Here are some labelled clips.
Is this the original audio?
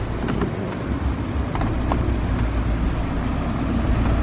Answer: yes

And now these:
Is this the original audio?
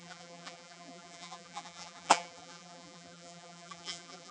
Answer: no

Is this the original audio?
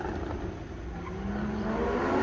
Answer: yes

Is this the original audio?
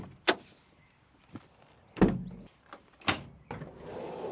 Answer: yes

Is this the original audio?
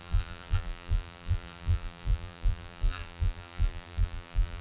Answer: no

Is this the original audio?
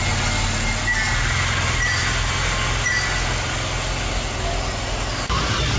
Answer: yes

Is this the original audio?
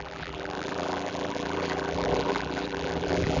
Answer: no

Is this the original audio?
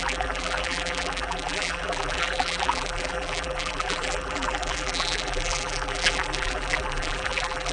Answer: no